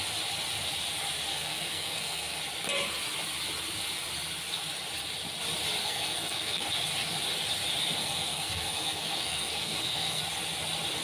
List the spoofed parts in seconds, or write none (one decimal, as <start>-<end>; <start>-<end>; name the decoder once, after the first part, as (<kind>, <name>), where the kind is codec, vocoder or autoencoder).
1.3-2.4 (codec, SNAC); 5.8-6.6; 8.0-10.2